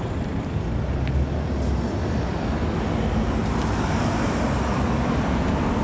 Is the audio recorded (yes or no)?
yes